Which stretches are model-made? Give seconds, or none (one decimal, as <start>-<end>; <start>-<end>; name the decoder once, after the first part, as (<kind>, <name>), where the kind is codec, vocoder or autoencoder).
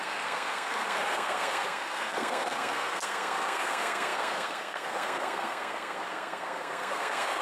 0.0-7.4 (codec, SNAC)